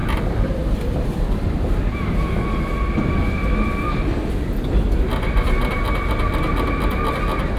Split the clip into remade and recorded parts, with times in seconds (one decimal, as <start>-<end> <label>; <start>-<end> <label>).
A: 0.0-7.6 recorded